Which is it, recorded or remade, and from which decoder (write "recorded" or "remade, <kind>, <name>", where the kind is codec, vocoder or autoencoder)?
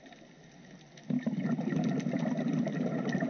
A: recorded